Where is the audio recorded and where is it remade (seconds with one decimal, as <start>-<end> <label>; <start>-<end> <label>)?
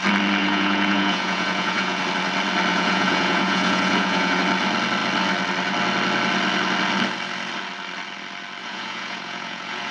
0.0-0.4 recorded; 0.4-2.0 remade; 2.0-2.7 recorded; 2.7-4.4 remade; 4.4-8.6 recorded; 8.6-9.9 remade